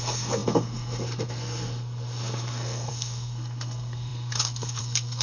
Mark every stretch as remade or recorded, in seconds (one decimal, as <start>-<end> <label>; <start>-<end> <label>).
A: 0.0-5.2 remade